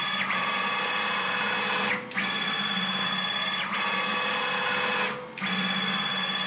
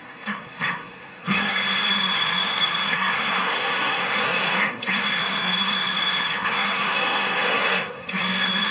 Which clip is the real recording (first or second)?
first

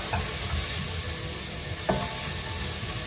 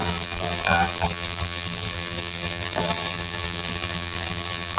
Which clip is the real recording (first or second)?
first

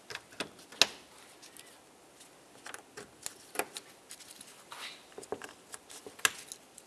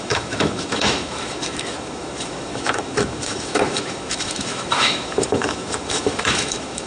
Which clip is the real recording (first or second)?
first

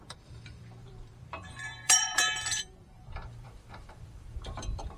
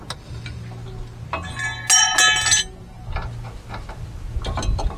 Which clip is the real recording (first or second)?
second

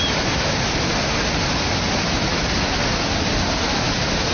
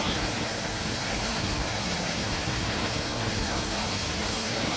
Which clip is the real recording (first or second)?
first